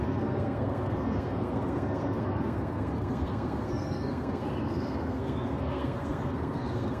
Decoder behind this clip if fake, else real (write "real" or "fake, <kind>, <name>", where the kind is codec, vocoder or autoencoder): fake, codec, SNAC